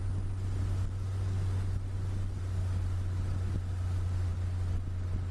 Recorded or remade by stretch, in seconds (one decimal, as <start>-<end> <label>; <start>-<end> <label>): 0.0-5.3 recorded